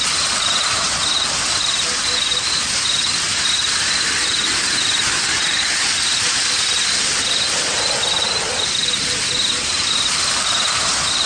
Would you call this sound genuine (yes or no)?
yes